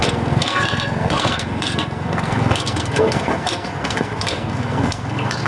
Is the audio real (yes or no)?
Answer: no